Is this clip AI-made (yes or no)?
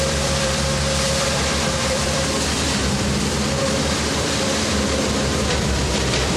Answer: yes